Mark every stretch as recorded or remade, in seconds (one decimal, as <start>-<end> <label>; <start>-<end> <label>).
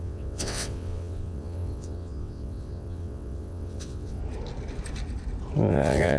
0.0-4.2 remade; 4.2-5.7 recorded; 5.7-6.2 remade